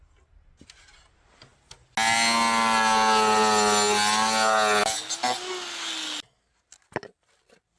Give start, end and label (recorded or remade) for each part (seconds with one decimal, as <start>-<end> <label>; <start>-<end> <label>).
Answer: 0.0-7.8 recorded